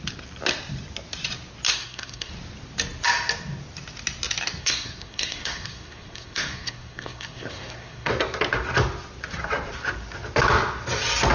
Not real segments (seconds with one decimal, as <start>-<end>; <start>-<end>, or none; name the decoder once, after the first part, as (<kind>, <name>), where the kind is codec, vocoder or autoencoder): 1.7-2.3 (codec, SNAC); 4.6-8.1